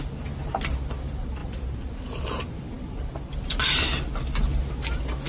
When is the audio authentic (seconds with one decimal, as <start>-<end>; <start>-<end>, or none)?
0.0-5.3